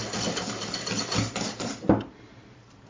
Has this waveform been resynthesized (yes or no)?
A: no